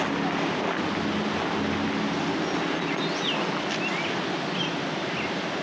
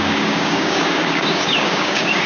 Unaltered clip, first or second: first